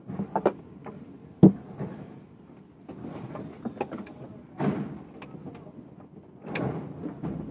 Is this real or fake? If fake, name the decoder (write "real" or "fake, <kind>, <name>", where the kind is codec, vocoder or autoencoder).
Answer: real